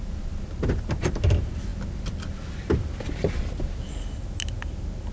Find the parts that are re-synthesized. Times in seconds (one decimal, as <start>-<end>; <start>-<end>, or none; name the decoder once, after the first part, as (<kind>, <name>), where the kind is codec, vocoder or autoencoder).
none